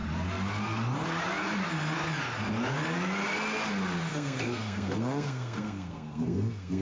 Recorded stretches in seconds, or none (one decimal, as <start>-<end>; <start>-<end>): 0.0-4.1